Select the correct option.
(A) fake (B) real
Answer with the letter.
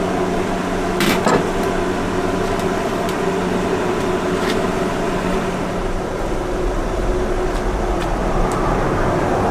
B